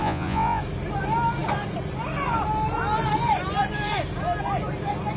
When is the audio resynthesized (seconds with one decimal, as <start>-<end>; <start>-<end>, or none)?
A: 0.0-0.6